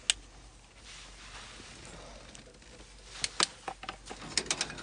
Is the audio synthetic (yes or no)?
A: no